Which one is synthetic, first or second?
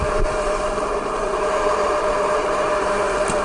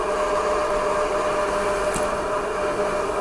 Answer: first